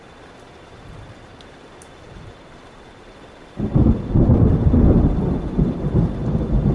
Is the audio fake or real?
real